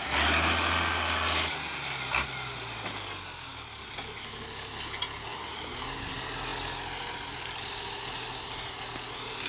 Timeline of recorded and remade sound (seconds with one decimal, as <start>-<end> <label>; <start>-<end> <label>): 0.0-9.5 recorded